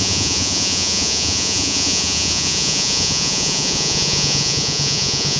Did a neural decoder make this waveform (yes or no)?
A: yes